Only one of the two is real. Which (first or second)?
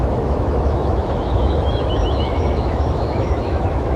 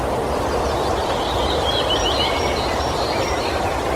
second